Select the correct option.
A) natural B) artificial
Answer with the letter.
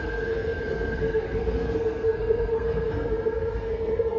B